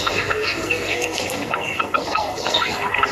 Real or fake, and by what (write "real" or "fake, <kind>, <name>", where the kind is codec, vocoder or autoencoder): fake, codec, SNAC